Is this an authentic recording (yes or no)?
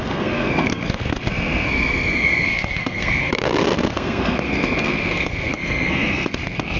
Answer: no